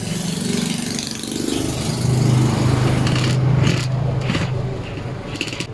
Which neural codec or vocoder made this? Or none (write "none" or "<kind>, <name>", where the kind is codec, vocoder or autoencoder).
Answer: none